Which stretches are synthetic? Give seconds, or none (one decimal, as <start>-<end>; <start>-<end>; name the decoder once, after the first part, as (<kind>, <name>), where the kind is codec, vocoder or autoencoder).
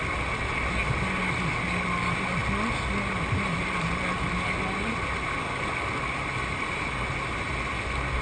none